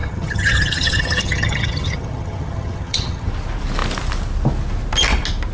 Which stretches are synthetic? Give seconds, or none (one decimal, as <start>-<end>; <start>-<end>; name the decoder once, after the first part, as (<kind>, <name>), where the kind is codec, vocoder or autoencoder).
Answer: 0.0-3.3 (vocoder, HiFi-GAN)